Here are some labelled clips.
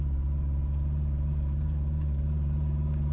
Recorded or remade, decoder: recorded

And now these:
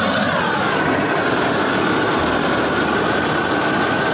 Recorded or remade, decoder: recorded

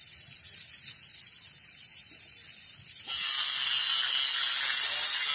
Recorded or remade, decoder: recorded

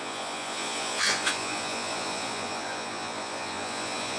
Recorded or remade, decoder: remade, vocoder, Vocos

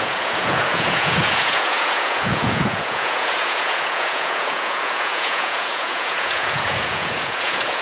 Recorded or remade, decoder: remade, vocoder, Vocos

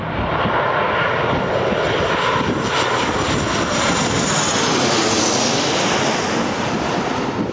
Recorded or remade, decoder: recorded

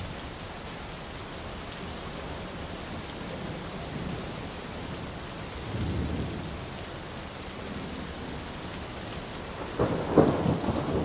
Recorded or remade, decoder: recorded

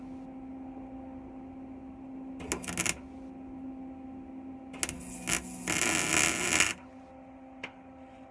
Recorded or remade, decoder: recorded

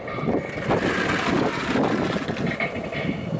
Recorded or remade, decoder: recorded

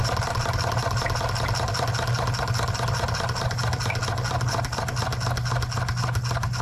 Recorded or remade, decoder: recorded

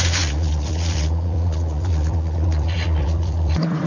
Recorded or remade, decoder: remade, vocoder, Vocos